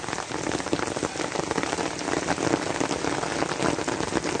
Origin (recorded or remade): recorded